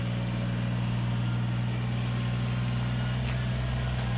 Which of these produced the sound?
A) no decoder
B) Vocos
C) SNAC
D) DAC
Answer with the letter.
A